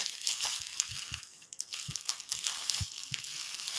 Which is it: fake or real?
fake